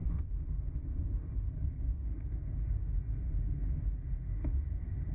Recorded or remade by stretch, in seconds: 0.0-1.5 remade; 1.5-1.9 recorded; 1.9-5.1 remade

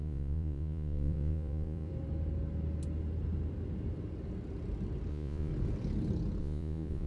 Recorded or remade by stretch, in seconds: 0.0-1.9 remade; 1.9-5.1 recorded; 5.1-5.5 remade; 5.5-6.4 recorded; 6.4-7.1 remade

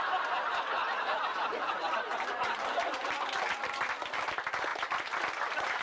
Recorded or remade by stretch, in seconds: 0.0-5.8 recorded

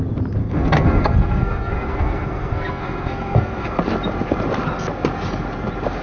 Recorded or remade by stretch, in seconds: 0.0-0.4 recorded; 0.4-3.8 remade; 3.8-6.0 recorded